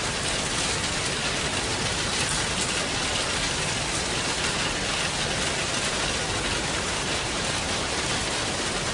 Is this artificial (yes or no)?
no